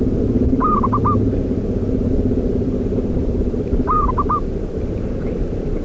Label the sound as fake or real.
fake